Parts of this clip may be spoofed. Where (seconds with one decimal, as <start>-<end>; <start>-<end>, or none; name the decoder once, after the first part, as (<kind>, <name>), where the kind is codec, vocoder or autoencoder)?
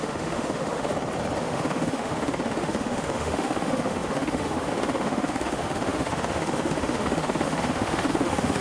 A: 0.0-0.9 (autoencoder, DAC-VAE); 1.4-8.6